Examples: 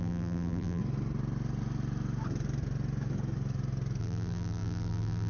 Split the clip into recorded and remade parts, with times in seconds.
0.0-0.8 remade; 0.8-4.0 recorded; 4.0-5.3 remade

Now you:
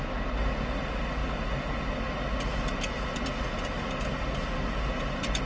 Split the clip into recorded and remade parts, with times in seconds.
0.0-5.5 recorded

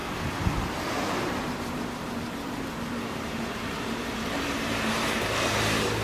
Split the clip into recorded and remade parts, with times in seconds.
0.0-0.9 recorded; 0.9-6.0 remade

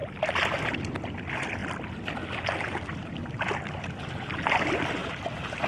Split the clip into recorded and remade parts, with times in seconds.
0.0-5.7 recorded

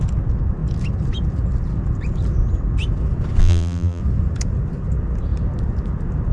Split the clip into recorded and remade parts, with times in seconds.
0.0-3.4 recorded; 3.4-4.0 remade; 4.0-6.3 recorded